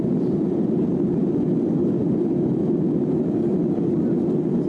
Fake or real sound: real